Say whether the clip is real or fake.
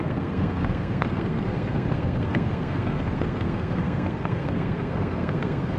fake